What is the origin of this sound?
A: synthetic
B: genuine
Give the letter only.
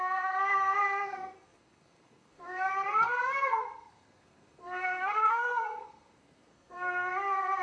A